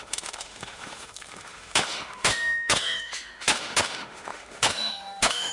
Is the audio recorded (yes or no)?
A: no